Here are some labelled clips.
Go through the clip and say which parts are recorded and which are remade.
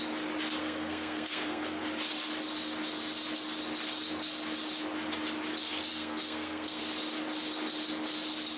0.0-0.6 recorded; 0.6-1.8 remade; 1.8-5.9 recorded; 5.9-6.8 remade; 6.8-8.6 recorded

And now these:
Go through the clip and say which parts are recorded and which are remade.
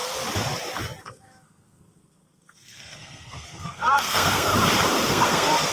0.0-1.0 recorded; 1.0-4.5 remade; 4.5-5.1 recorded; 5.1-5.7 remade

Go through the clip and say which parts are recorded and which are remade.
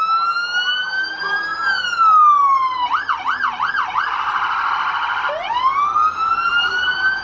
0.0-7.2 recorded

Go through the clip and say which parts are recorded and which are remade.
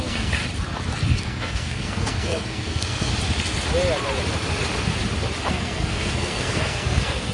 0.0-0.4 remade; 0.4-1.2 recorded; 1.2-3.1 remade; 3.1-5.5 recorded; 5.5-7.3 remade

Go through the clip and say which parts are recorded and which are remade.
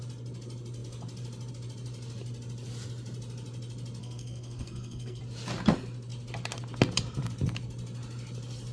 0.0-4.0 recorded; 4.0-5.2 remade; 5.2-8.7 recorded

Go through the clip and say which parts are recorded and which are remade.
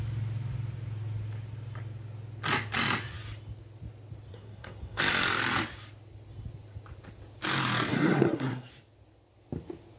0.0-4.3 recorded; 4.3-5.0 remade; 5.0-7.9 recorded; 7.9-8.7 remade; 8.7-10.0 recorded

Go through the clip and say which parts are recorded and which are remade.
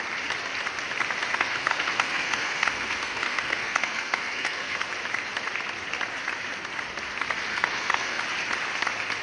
0.0-1.3 recorded; 1.3-4.9 remade; 4.9-7.5 recorded; 7.5-8.2 remade; 8.2-9.2 recorded